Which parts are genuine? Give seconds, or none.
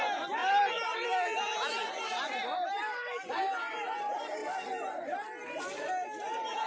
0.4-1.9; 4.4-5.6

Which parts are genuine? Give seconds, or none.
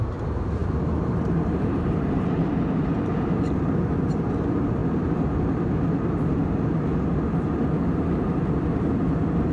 6.4-7.4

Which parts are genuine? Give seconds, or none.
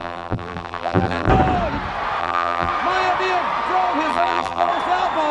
1.3-2.2; 2.7-4.1; 4.7-5.3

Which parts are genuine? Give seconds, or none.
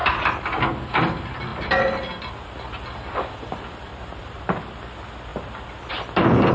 0.0-3.9; 4.6-6.5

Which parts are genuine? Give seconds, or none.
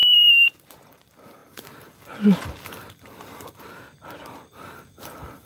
1.4-2.8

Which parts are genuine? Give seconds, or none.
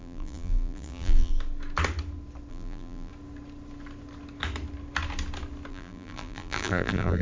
1.3-2.5; 3.1-5.7